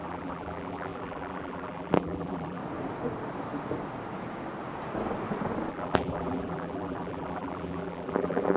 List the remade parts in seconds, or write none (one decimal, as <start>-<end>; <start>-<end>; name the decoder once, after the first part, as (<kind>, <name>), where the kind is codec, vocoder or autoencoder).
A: 0.0-2.6 (vocoder, BigVGAN v2); 5.7-8.6